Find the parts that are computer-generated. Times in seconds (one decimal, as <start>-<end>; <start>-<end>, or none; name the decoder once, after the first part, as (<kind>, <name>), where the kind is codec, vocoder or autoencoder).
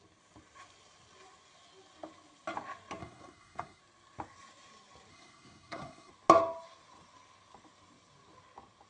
3.0-3.8 (codec, SNAC); 5.1-6.1